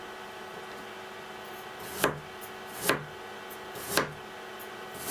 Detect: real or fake real